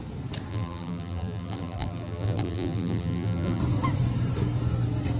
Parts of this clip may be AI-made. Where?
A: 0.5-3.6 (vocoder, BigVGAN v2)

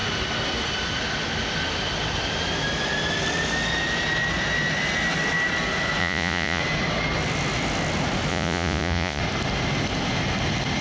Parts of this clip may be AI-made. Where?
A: 6.0-6.6 (vocoder, Vocos); 8.3-9.2

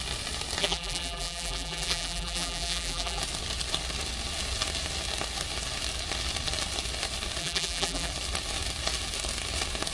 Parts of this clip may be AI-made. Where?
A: 0.6-3.2 (vocoder, BigVGAN v2); 7.4-8.1

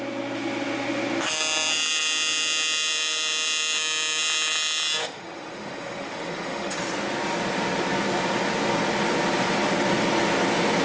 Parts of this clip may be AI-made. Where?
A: 5.0-6.8 (autoencoder, DAC-VAE)

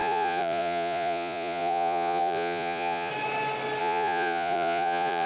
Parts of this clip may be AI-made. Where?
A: 0.0-3.1 (vocoder, Vocos); 3.8-5.3

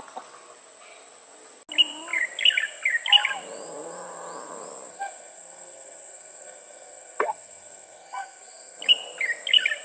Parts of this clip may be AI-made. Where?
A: 4.9-8.8 (codec, SNAC)

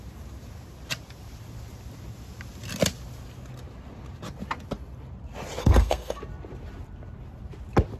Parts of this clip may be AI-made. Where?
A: 5.6-6.2 (codec, SNAC)